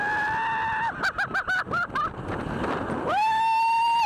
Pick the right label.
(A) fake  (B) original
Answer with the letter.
B